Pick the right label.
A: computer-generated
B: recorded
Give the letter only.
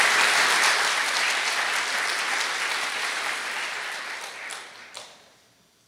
A